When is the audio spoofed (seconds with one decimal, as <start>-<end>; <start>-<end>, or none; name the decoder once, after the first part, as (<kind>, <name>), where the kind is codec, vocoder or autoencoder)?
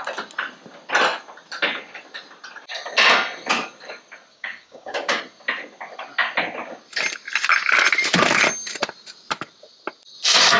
4.3-5.2 (codec, DAC)